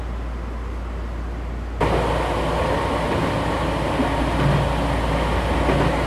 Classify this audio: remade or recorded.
recorded